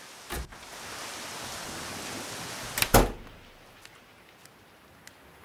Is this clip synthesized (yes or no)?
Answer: no